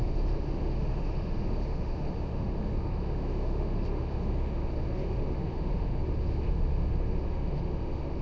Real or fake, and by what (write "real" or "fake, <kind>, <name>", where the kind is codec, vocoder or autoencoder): fake, autoencoder, DAC-VAE